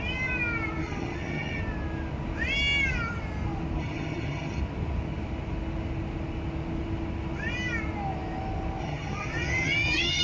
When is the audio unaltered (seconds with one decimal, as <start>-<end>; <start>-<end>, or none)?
0.0-0.8; 1.6-3.8; 4.6-8.8